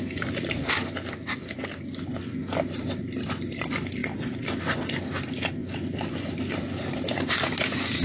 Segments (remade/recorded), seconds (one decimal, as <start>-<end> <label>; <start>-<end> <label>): 0.0-8.0 recorded